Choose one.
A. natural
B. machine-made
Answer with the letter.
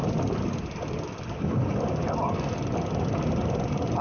A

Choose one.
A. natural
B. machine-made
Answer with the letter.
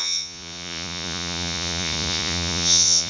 B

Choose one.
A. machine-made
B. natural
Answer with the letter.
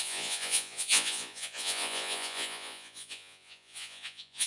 A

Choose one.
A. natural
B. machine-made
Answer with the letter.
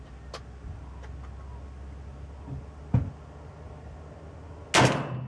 A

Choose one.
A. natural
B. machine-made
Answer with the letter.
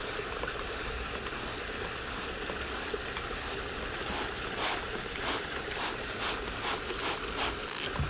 A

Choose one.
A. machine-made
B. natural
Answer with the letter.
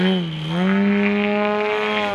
B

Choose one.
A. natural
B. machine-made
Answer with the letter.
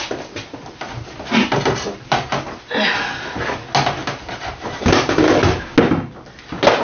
A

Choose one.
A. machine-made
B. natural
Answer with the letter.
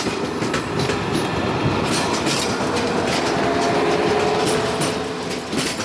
B